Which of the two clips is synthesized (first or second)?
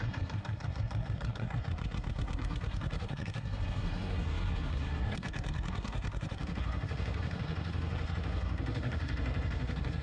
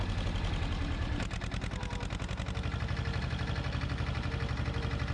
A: first